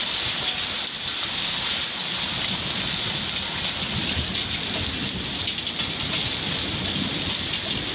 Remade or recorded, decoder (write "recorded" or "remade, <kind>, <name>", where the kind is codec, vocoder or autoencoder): recorded